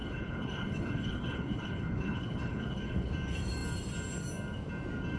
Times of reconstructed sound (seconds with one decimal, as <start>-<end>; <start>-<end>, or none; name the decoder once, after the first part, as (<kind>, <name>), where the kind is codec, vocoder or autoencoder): 0.0-3.1 (codec, HILCodec)